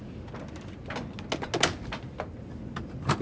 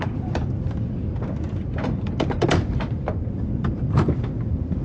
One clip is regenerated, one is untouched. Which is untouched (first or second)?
first